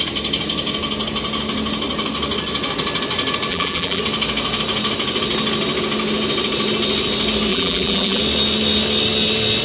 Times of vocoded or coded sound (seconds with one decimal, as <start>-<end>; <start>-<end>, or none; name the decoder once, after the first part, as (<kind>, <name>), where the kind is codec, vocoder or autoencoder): 3.5-4.0 (vocoder, BigVGAN v2); 7.5-8.2